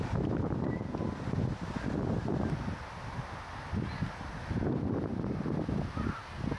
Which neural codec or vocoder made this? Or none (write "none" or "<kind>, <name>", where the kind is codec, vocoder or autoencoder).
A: none